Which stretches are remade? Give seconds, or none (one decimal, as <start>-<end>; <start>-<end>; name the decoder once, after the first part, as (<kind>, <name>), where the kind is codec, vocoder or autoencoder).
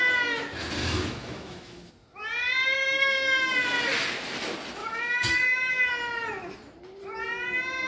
0.8-1.9 (autoencoder, DAC-VAE); 4.8-5.9